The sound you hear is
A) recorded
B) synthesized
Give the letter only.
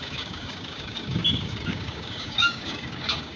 B